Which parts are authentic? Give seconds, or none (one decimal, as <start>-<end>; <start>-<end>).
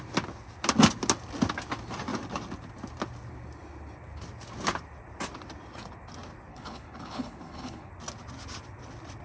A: 0.0-6.5; 7.9-9.2